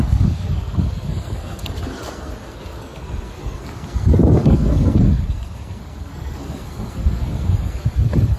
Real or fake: fake